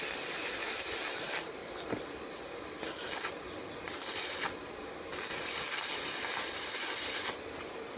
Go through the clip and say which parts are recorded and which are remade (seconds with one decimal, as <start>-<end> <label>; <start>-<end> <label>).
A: 0.0-0.6 remade; 0.6-1.2 recorded; 1.2-8.0 remade